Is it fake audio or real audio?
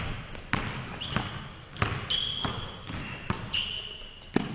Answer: real